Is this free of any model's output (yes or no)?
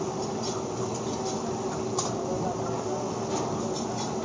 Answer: yes